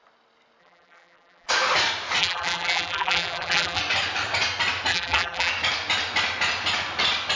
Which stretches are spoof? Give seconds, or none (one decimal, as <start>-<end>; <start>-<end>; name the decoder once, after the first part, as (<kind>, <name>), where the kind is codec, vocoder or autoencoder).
0.6-1.5 (vocoder, BigVGAN v2); 2.2-3.8; 4.9-5.5